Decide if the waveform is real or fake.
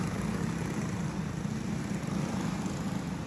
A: real